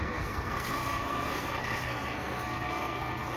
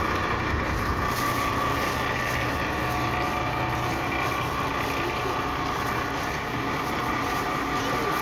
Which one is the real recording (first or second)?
second